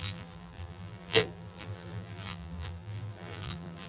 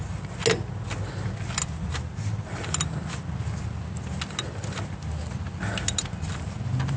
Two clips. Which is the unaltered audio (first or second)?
second